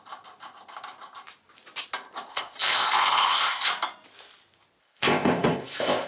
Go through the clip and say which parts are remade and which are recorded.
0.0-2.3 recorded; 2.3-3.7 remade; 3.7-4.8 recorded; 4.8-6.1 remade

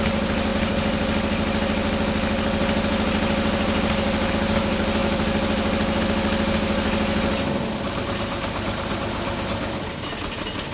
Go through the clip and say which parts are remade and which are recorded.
0.0-10.7 recorded

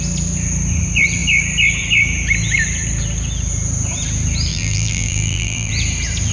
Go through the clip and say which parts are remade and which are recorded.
0.0-4.5 recorded; 4.5-5.7 remade; 5.7-6.3 recorded

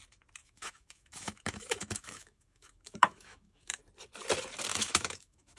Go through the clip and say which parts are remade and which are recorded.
0.0-0.4 recorded; 0.4-3.8 remade; 3.8-4.7 recorded; 4.7-5.6 remade

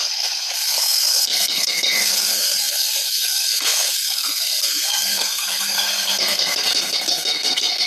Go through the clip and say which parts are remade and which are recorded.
0.0-7.9 remade

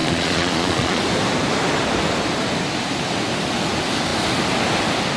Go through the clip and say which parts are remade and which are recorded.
0.0-1.0 remade; 1.0-5.2 recorded

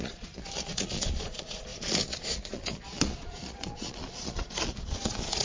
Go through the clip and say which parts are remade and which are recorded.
0.0-5.4 remade

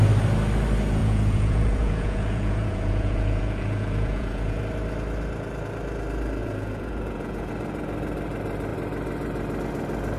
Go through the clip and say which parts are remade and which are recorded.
0.0-1.0 recorded; 1.0-4.6 remade; 4.6-6.4 recorded; 6.4-7.5 remade; 7.5-10.2 recorded